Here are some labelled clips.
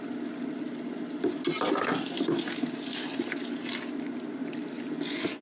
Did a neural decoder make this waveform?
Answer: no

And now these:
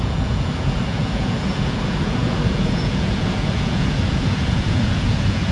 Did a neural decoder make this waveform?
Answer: yes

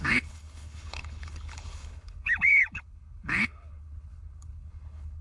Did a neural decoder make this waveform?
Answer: yes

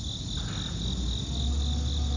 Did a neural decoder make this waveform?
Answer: no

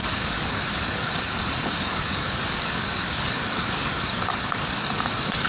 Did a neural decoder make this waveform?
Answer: yes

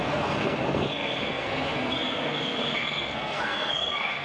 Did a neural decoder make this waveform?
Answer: yes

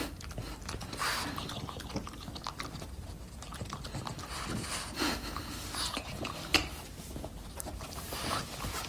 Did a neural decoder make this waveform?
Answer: no